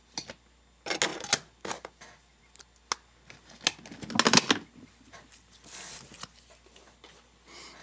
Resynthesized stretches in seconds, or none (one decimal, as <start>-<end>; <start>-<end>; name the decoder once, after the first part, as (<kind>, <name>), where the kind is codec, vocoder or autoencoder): none